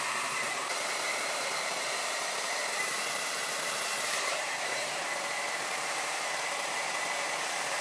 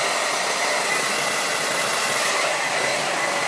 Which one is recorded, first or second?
second